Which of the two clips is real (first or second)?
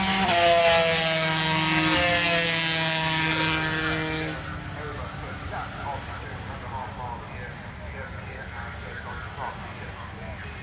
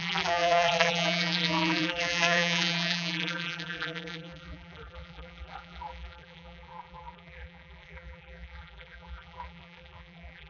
first